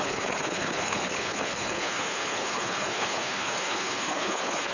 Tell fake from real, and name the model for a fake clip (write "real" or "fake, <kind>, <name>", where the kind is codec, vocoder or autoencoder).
fake, codec, HILCodec